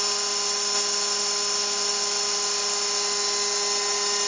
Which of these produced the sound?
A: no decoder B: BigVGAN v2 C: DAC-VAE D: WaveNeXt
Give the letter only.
A